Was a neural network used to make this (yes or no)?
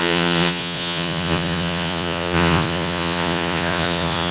yes